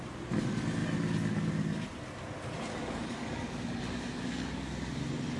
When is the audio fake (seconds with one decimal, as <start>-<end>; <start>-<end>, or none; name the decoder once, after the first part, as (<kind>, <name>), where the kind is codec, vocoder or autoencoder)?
2.8-5.0 (codec, DAC)